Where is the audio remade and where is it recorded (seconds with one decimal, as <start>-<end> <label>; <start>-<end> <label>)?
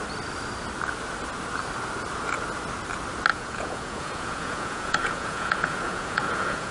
0.0-3.3 recorded; 3.3-6.7 remade